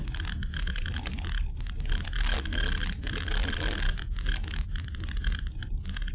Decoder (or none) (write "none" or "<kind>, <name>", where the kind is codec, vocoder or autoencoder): none